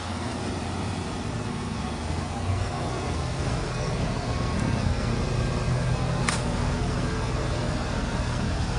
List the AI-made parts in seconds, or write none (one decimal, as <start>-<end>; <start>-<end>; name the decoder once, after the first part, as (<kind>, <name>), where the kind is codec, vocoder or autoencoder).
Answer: 0.0-0.4 (codec, SNAC); 1.3-5.1; 5.7-8.8